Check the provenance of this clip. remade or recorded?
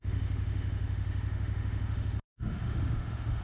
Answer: remade